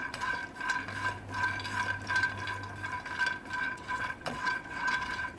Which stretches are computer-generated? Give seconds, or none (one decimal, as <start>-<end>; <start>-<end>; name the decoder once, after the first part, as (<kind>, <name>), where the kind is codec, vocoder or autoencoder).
0.0-0.4 (vocoder, WaveNeXt); 3.6-5.4